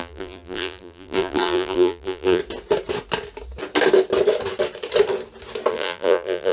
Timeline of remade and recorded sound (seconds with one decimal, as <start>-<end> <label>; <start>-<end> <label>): 0.0-2.4 remade; 2.4-5.7 recorded; 5.7-6.5 remade